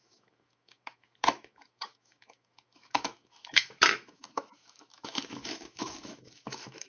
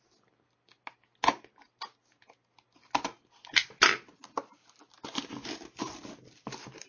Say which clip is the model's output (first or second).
first